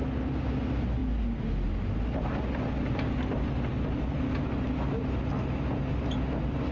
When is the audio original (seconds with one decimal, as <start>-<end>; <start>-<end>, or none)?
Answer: 0.0-6.7